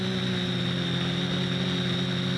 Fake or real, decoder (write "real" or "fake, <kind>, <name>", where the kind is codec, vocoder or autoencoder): real